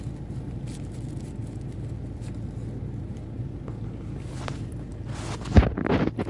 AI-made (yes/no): no